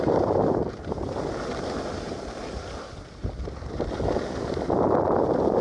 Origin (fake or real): real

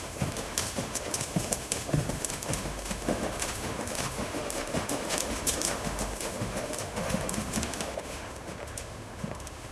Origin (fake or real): fake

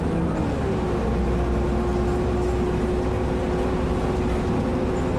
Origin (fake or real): real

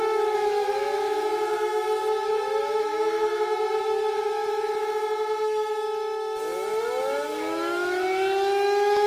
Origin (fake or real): fake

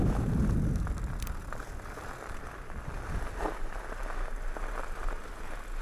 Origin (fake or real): real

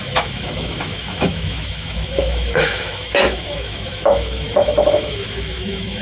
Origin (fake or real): fake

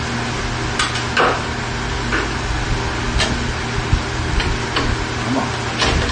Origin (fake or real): real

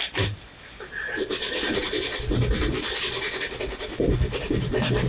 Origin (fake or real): real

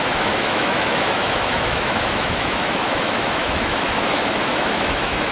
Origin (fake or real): fake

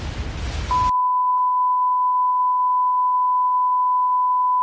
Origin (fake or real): real